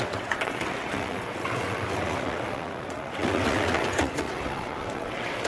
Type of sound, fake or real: fake